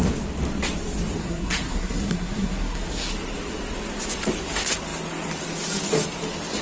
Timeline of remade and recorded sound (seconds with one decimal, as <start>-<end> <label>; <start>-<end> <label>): 0.0-1.2 recorded; 1.2-3.1 remade; 3.1-6.6 recorded